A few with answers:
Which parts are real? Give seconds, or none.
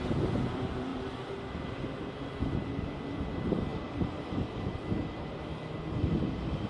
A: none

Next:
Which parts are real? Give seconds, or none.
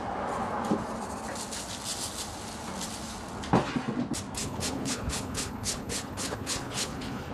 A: 0.0-4.4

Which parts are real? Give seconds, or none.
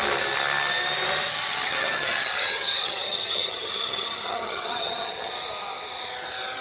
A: 0.0-1.3; 5.3-6.6